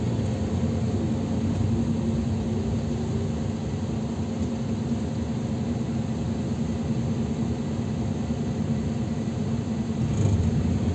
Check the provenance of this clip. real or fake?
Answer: real